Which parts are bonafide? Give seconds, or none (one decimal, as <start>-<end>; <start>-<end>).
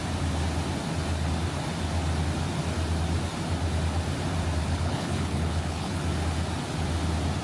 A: 0.0-4.6; 6.0-7.4